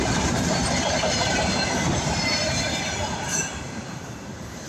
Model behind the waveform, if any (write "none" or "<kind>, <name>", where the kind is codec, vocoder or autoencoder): vocoder, BigVGAN v2